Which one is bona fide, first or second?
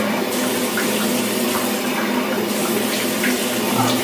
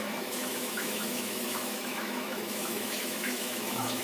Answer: first